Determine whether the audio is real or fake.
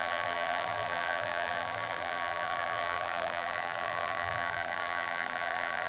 fake